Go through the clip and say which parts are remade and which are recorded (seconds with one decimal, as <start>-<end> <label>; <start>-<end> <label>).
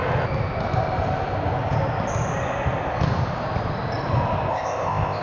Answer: 0.0-4.5 recorded; 4.5-5.2 remade